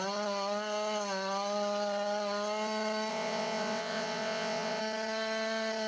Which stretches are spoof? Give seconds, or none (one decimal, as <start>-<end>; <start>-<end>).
3.1-4.8